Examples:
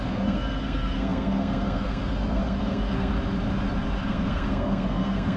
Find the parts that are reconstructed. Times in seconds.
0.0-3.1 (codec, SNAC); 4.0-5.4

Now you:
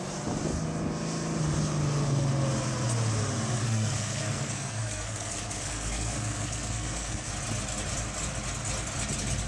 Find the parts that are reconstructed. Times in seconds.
3.6-7.3 (codec, SNAC)